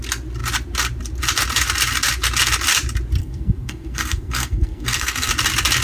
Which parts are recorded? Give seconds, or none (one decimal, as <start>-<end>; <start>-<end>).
0.0-3.2; 5.3-5.8